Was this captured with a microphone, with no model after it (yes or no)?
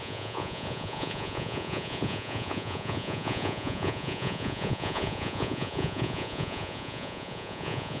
no